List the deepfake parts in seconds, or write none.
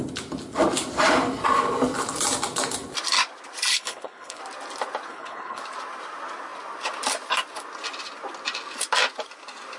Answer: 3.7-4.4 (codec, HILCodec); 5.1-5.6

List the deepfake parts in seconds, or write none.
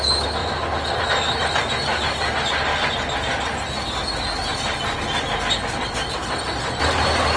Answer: 5.6-6.2 (vocoder, BigVGAN v2)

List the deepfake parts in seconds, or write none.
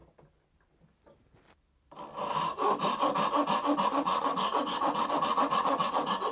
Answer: 3.8-6.3 (vocoder, WaveNeXt)